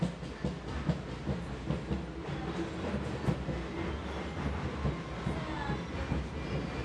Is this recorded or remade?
recorded